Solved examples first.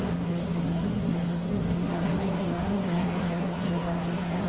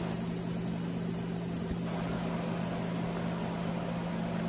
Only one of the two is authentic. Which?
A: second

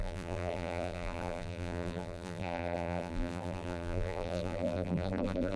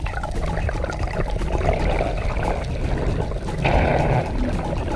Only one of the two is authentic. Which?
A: second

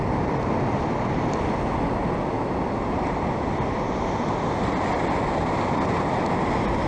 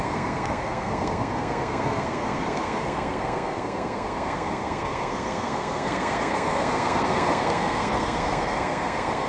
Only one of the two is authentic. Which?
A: first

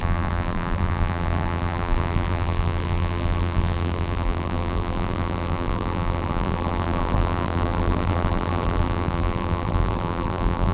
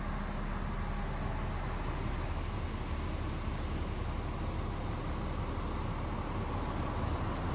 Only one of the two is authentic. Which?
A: second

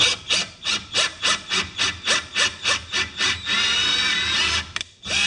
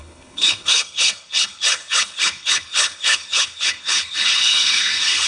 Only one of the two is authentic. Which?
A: first